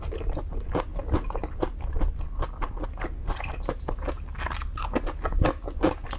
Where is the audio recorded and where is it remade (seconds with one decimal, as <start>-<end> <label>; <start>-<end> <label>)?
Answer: 0.0-6.2 recorded